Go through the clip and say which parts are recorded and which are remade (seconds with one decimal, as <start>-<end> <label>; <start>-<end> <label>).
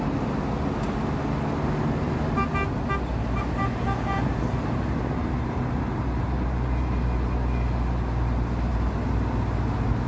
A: 0.0-10.1 recorded